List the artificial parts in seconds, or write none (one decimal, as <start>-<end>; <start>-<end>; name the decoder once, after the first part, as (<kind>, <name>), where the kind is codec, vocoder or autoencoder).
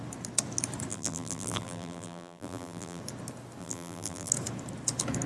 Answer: 0.9-3.0 (vocoder, BigVGAN v2); 3.6-4.3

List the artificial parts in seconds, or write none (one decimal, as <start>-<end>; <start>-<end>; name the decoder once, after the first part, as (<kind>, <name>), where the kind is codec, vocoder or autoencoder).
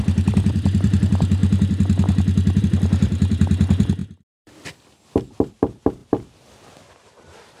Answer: 0.0-1.4 (vocoder, BigVGAN v2); 2.6-7.6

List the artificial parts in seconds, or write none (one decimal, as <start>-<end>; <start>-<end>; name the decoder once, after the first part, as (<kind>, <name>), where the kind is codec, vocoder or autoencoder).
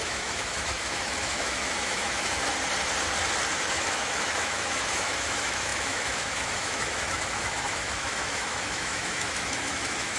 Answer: 0.0-2.4 (autoencoder, DAC-VAE); 3.7-10.2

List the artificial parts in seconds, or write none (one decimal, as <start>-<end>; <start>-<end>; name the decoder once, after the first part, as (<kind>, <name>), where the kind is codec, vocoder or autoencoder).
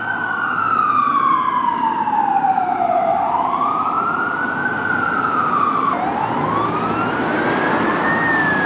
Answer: 0.6-5.2 (vocoder, BigVGAN v2)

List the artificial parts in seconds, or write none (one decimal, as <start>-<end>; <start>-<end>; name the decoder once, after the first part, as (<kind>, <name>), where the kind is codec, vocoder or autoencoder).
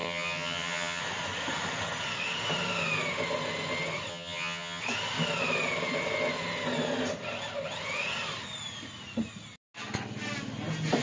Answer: 0.0-1.0 (vocoder, HiFi-GAN); 4.1-4.8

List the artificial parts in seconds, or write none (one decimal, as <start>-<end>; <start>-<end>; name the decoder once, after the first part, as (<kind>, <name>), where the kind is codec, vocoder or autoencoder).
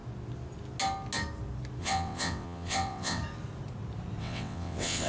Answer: 1.8-3.2 (vocoder, WaveNeXt); 4.2-5.1